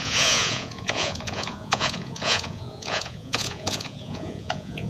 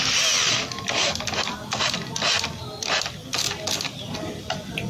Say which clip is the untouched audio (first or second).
second